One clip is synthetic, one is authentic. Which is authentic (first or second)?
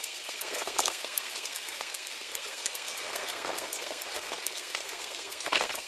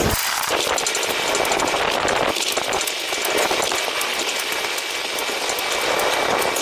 second